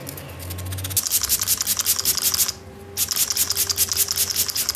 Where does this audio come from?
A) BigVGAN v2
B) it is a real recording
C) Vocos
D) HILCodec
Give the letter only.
B